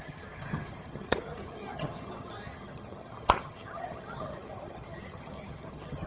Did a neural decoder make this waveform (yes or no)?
yes